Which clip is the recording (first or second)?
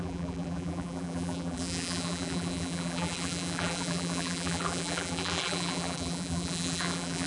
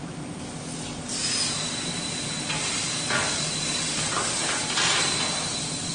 second